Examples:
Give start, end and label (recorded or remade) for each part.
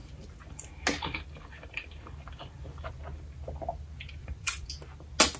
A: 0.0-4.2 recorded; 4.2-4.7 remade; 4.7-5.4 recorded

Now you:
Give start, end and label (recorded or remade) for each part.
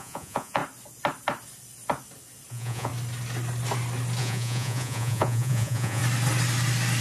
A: 0.0-0.6 remade; 0.6-2.5 recorded; 2.5-2.9 remade; 2.9-4.2 recorded; 4.2-6.0 remade; 6.0-7.0 recorded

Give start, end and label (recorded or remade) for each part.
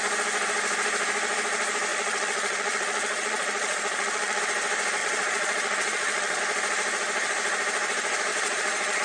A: 0.0-1.9 recorded; 1.9-4.4 remade; 4.4-5.0 recorded; 5.0-6.4 remade; 6.4-8.3 recorded; 8.3-9.0 remade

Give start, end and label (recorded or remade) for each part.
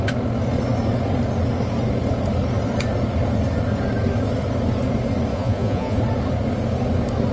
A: 0.0-5.3 recorded; 5.3-6.0 remade; 6.0-7.3 recorded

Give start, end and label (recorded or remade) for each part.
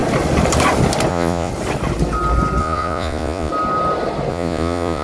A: 0.0-1.1 recorded; 1.1-1.5 remade; 1.5-2.6 recorded; 2.6-3.5 remade; 3.5-4.3 recorded; 4.3-5.0 remade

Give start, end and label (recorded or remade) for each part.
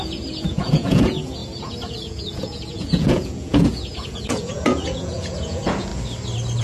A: 0.0-5.9 remade; 5.9-6.6 recorded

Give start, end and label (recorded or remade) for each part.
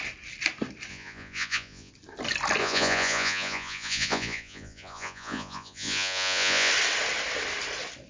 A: 0.0-0.9 recorded; 0.9-1.9 remade; 1.9-2.6 recorded; 2.6-6.7 remade; 6.7-8.1 recorded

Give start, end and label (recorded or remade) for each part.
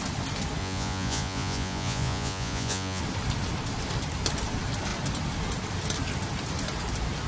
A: 0.0-0.6 recorded; 0.6-3.0 remade; 3.0-7.3 recorded